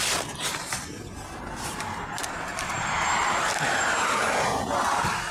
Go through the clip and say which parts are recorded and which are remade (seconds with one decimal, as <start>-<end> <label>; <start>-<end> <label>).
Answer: 0.0-5.3 recorded